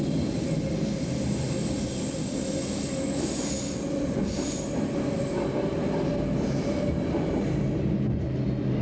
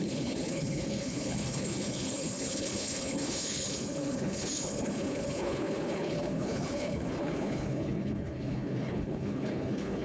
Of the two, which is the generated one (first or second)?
second